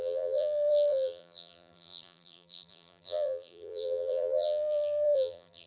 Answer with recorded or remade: remade